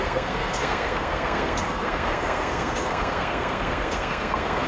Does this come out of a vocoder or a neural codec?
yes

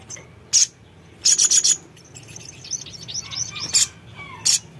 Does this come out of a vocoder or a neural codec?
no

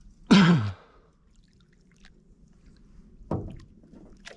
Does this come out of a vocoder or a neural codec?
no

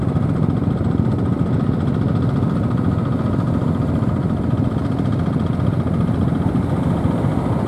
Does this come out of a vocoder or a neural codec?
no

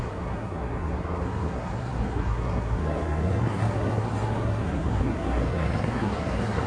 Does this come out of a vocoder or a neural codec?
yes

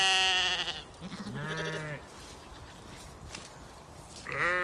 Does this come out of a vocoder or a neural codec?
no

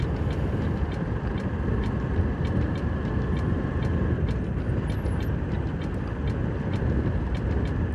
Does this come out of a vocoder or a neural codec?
no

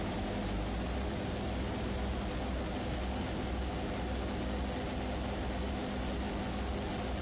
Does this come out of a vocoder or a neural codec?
no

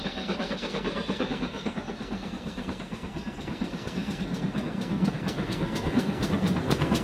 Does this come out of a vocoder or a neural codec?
yes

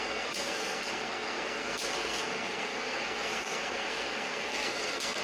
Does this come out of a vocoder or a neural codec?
yes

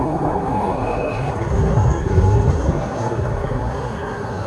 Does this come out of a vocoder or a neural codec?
yes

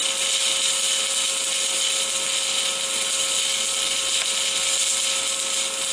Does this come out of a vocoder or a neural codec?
no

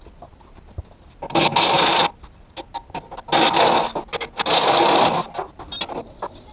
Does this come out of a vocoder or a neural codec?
no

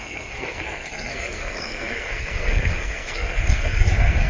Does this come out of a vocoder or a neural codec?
yes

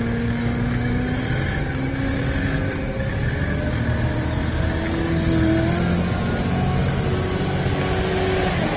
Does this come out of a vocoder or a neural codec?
no